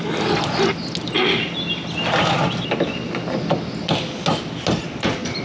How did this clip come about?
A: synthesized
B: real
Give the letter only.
B